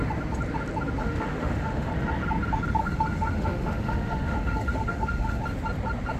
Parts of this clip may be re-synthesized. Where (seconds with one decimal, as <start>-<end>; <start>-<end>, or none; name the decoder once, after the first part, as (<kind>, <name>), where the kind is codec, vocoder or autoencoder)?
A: 1.0-1.9 (autoencoder, DAC-VAE); 2.8-5.4